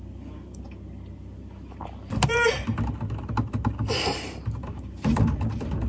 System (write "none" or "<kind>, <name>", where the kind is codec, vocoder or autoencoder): none